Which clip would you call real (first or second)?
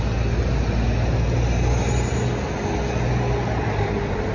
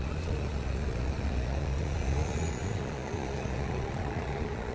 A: first